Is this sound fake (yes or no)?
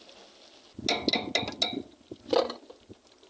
no